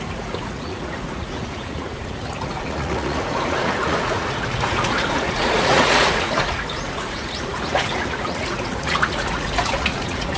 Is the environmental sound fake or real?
fake